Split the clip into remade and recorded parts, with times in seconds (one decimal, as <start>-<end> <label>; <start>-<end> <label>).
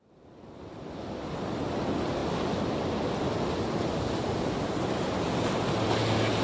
0.0-6.4 recorded